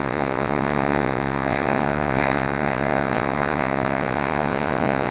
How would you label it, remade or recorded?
remade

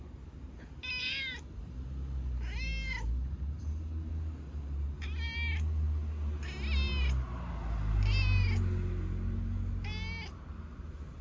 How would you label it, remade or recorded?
recorded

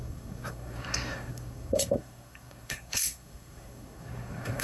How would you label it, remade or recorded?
remade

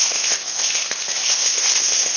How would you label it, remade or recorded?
remade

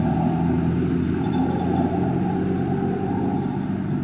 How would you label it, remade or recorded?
recorded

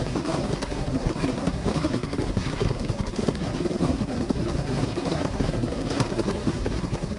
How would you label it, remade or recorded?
remade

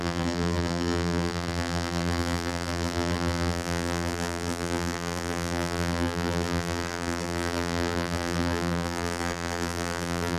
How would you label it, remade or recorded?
remade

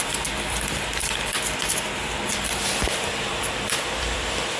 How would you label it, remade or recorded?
remade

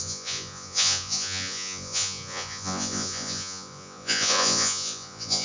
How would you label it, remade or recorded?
remade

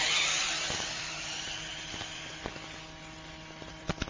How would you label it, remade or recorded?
recorded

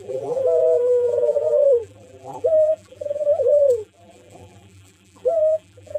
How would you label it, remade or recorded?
remade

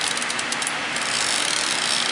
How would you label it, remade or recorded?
recorded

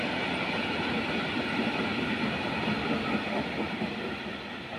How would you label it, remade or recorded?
recorded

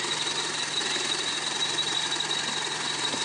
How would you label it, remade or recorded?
recorded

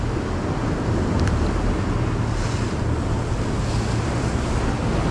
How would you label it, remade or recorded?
recorded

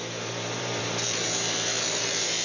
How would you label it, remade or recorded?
remade